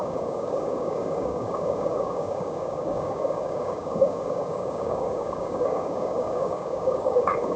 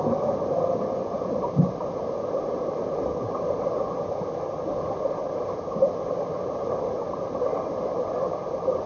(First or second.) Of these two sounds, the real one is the second